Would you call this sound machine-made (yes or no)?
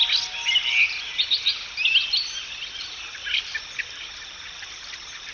no